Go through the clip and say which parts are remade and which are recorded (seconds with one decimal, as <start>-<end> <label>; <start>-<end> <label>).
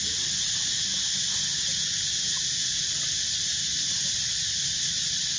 0.0-1.7 recorded; 1.7-2.8 remade; 2.8-5.4 recorded